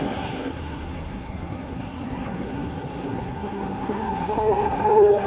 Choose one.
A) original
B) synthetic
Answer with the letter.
B